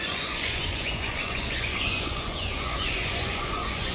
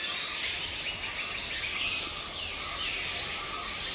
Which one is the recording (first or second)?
second